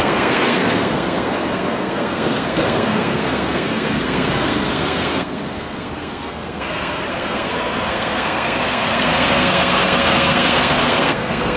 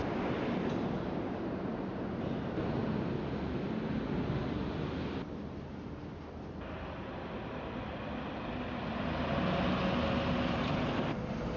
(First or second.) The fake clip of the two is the first